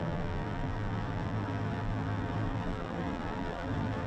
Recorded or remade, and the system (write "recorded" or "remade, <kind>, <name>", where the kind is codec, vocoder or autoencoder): remade, vocoder, BigVGAN v2